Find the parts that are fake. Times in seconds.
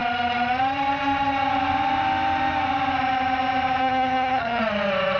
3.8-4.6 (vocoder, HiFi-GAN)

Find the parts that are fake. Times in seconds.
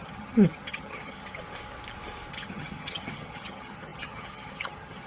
0.0-1.4 (vocoder, HiFi-GAN); 2.3-5.1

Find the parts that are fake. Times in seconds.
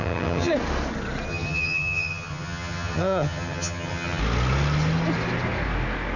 0.0-0.5 (vocoder, HiFi-GAN); 1.3-4.2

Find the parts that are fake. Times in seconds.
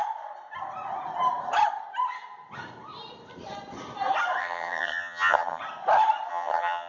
4.4-5.6 (vocoder, HiFi-GAN); 6.3-6.9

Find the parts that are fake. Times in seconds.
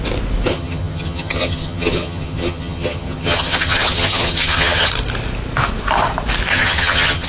0.5-4.9 (vocoder, HiFi-GAN); 6.5-7.3